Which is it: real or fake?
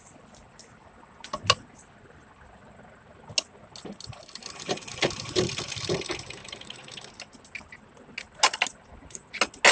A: real